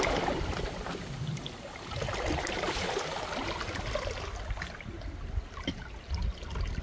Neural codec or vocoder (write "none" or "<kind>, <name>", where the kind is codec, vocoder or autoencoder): none